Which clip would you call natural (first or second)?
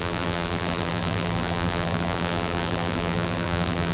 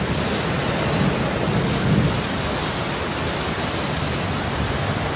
second